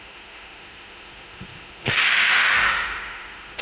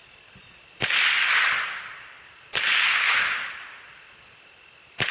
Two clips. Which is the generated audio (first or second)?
first